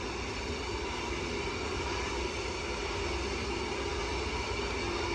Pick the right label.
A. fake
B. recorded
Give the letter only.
B